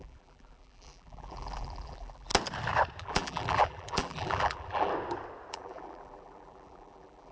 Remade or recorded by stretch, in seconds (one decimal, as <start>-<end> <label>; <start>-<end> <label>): 0.0-2.3 remade; 2.3-3.0 recorded; 3.0-4.9 remade; 4.9-5.5 recorded; 5.5-7.3 remade